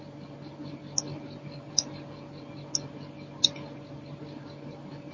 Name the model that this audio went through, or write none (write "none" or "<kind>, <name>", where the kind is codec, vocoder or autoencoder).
none